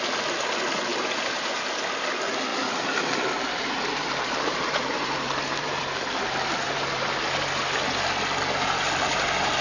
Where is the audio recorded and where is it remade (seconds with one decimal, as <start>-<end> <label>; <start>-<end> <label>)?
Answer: 0.0-0.9 recorded; 0.9-1.5 remade; 1.5-2.5 recorded; 2.5-7.0 remade; 7.0-9.6 recorded